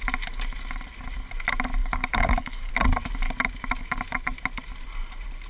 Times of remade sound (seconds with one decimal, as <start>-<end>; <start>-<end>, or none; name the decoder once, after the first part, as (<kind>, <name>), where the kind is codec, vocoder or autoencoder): 1.8-2.7 (codec, DAC)